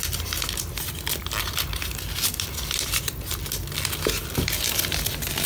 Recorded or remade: recorded